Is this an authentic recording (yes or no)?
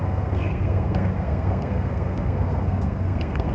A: no